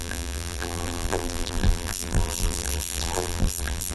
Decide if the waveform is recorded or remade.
remade